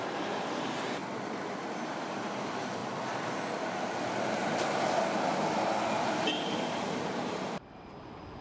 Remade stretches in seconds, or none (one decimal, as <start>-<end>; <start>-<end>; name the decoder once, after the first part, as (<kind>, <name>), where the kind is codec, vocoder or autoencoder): 0.0-1.0 (vocoder, BigVGAN v2); 1.8-2.8; 6.0-8.4